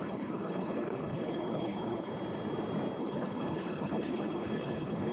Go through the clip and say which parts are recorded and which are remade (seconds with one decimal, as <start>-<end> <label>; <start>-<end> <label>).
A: 0.0-2.1 remade; 2.1-3.0 recorded; 3.0-5.1 remade